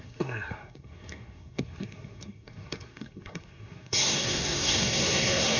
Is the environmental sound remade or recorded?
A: remade